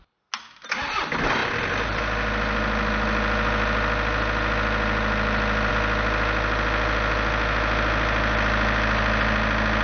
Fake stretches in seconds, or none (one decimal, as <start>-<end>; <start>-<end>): none